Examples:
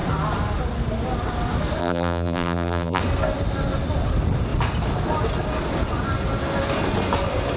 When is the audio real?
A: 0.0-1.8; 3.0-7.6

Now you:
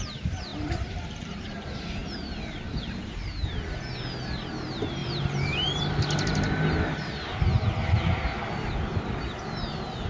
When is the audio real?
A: 0.0-0.5; 1.6-2.0; 3.5-5.0; 5.8-10.1

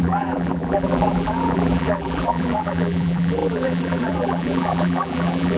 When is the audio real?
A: none